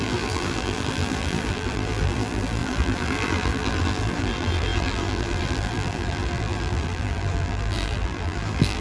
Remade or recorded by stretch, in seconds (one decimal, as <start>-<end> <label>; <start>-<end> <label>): 0.0-8.8 remade